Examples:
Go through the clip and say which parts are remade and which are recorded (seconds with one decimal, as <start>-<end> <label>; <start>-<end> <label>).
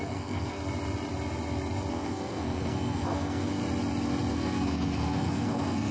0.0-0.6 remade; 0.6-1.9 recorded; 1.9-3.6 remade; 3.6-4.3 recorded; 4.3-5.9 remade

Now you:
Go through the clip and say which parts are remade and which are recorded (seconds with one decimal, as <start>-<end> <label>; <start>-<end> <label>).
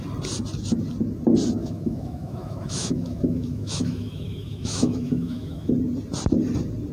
0.0-1.6 recorded; 1.6-5.7 remade; 5.7-6.9 recorded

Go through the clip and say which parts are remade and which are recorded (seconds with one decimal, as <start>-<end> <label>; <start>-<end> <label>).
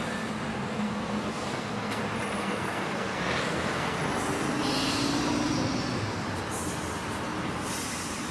0.0-0.5 recorded; 0.5-2.0 remade; 2.0-2.4 recorded; 2.4-4.0 remade; 4.0-8.3 recorded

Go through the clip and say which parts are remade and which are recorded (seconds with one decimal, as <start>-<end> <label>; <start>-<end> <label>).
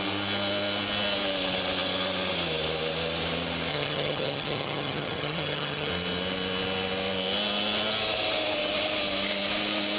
0.0-3.7 recorded; 3.7-5.9 remade; 5.9-10.0 recorded